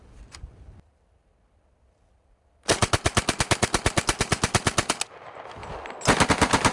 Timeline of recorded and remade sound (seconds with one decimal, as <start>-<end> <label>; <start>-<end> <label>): 0.0-6.7 recorded